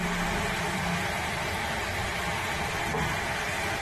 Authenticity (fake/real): real